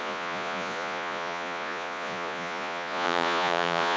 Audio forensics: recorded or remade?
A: remade